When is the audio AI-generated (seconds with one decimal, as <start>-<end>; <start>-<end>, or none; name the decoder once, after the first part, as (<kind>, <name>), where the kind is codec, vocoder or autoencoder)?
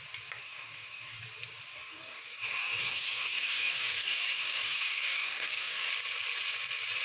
0.4-1.2 (codec, DAC); 1.7-5.9